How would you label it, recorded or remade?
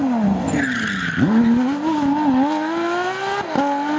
recorded